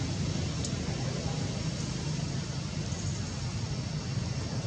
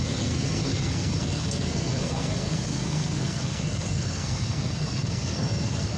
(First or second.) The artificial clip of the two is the second